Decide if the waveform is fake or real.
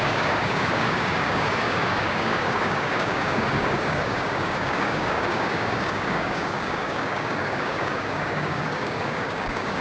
fake